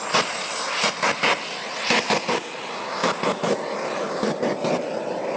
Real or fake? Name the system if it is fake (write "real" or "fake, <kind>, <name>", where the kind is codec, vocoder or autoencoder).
real